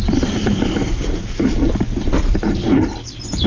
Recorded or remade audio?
recorded